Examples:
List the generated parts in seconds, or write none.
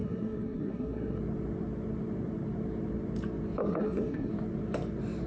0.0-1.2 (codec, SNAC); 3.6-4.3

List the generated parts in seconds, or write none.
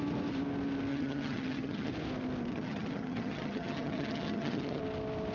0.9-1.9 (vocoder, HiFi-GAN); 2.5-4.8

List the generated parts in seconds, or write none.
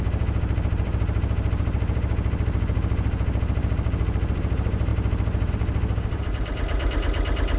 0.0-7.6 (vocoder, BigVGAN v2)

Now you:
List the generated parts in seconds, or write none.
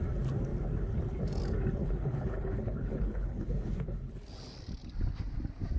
1.8-4.1 (codec, HILCodec)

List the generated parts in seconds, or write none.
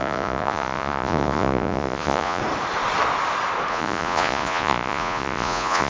0.0-2.4 (vocoder, Vocos); 3.7-5.9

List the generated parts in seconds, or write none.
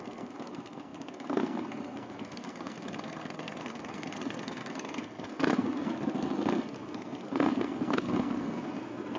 0.0-9.2 (codec, SNAC)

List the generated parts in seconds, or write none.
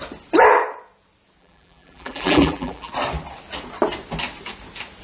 1.4-2.9 (vocoder, BigVGAN v2)